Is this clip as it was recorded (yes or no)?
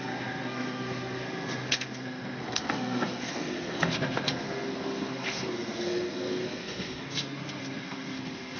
no